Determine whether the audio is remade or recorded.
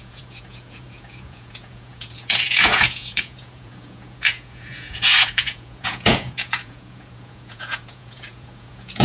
remade